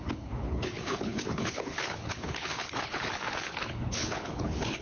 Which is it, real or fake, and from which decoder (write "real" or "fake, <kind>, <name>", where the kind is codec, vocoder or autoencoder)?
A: fake, codec, HILCodec